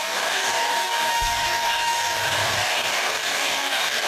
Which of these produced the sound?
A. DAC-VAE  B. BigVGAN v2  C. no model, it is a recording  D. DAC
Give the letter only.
D